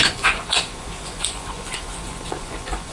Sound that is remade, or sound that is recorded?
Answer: remade